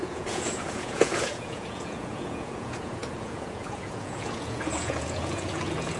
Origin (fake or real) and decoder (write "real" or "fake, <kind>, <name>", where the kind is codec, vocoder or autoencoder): fake, vocoder, Vocos